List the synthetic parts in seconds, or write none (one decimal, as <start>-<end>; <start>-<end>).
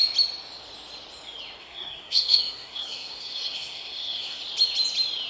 1.6-4.4